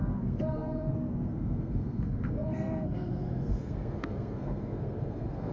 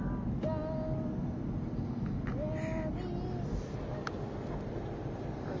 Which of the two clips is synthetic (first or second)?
first